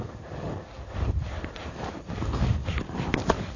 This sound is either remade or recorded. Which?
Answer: recorded